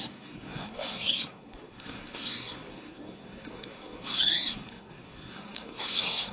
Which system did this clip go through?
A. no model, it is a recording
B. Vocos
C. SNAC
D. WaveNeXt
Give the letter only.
C